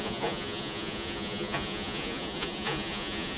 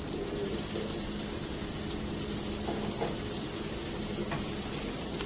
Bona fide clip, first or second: second